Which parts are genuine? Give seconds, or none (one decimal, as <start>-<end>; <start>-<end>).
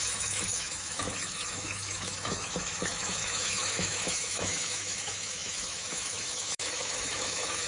none